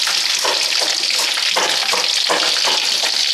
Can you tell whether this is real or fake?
real